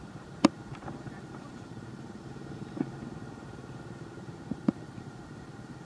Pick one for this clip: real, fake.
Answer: fake